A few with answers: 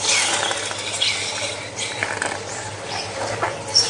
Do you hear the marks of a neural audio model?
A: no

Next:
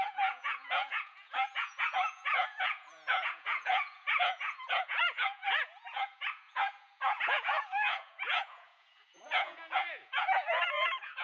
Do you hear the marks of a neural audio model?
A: yes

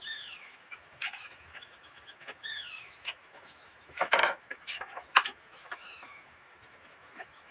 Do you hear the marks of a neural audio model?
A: yes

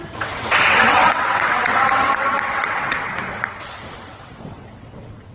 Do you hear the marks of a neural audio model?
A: yes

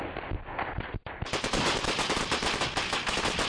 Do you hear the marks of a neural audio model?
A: no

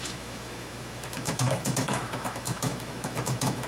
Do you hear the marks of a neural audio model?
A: yes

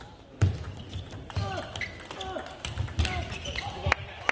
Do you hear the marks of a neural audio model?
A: no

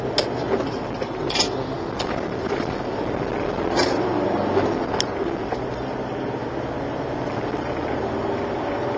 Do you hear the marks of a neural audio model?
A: no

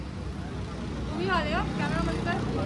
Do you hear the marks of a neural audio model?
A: no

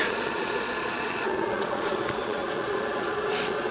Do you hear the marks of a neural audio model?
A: yes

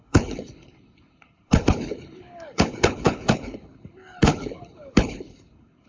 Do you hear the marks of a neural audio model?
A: yes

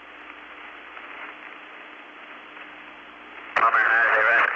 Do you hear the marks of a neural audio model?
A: no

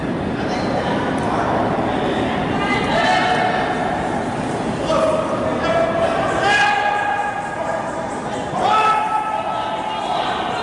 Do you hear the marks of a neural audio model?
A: no